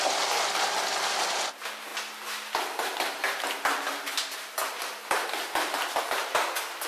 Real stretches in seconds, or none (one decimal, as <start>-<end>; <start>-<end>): 0.0-6.9